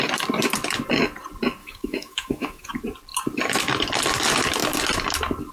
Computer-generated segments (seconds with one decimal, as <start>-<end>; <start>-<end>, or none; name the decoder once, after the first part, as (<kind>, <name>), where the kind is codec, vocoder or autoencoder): 1.6-2.7 (autoencoder, DAC-VAE)